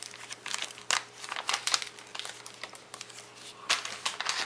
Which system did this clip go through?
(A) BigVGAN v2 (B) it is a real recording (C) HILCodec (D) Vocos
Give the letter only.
B